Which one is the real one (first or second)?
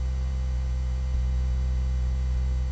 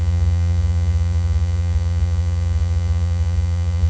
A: first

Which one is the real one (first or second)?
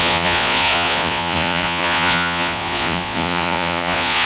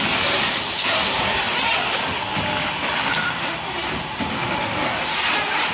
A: second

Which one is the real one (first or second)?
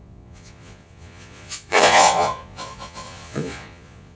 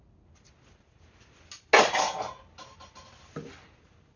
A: second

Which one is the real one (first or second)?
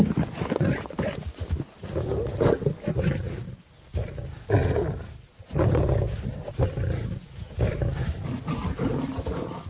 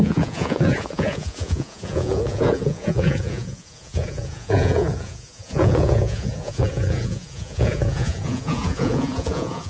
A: first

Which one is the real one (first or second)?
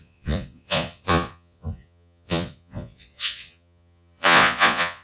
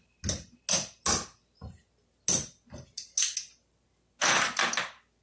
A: second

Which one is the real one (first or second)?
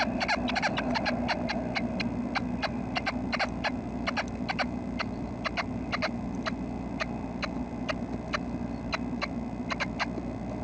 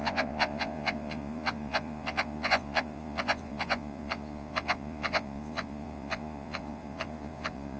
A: first